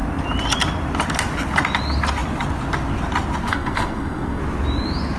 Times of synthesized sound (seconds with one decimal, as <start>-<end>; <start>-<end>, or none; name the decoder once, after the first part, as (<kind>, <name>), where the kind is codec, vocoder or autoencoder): 3.5-4.4 (codec, SNAC)